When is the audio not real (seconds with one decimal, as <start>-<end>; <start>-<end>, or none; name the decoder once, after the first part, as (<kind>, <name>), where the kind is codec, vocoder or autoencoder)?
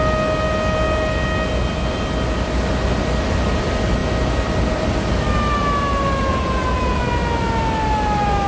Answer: 6.3-7.0 (vocoder, Vocos)